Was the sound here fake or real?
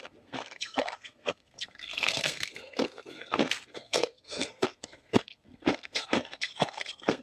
fake